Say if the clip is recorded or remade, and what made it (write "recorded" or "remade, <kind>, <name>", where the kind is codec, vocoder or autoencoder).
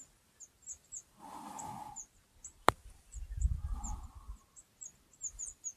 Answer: recorded